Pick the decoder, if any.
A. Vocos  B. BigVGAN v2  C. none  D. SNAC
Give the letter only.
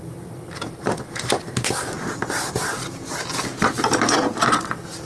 C